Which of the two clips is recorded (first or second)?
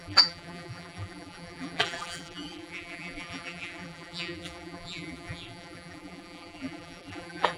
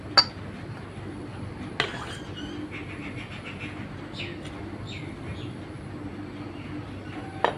second